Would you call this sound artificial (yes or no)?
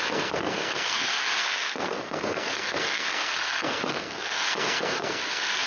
yes